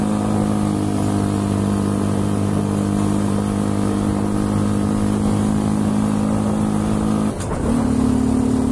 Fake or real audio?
real